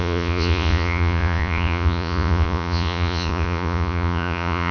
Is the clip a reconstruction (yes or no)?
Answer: yes